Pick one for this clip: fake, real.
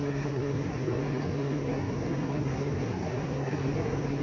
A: fake